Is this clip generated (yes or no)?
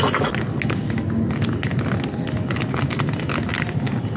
no